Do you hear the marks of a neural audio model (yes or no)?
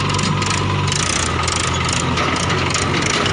no